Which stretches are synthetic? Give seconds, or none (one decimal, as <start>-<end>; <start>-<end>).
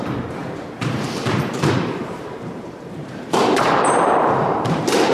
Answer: 0.0-5.1